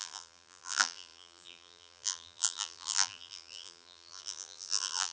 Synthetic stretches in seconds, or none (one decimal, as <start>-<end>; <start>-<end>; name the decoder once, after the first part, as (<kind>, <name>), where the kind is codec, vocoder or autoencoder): 0.0-5.1 (vocoder, BigVGAN v2)